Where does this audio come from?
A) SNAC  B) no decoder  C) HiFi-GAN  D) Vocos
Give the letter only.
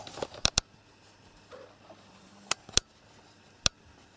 B